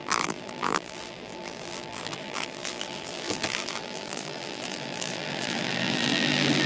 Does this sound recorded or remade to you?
remade